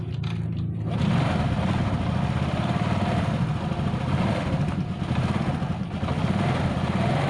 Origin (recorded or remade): recorded